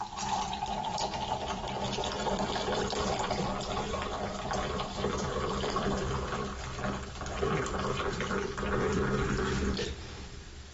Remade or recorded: remade